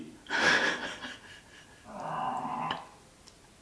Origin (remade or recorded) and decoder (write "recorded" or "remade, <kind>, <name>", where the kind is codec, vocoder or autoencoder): recorded